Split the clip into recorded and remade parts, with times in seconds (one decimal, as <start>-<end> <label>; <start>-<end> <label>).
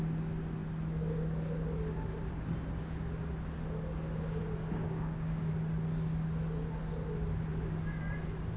0.0-4.8 recorded; 4.8-5.5 remade; 5.5-8.6 recorded